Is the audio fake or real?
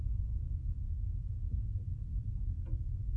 real